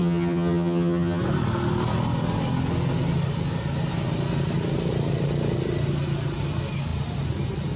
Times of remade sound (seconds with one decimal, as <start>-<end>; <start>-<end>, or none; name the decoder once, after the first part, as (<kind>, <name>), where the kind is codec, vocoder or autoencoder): 0.0-1.2 (vocoder, HiFi-GAN)

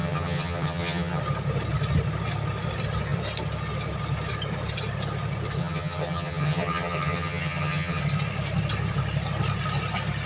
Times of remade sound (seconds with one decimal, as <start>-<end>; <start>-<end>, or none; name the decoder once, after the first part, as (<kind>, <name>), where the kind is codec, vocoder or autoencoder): 0.0-1.2 (vocoder, HiFi-GAN); 5.6-8.0

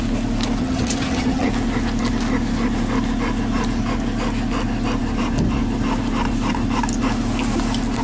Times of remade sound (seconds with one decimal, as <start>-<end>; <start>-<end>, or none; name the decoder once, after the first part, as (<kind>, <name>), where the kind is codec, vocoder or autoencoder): 0.6-1.5 (vocoder, HiFi-GAN)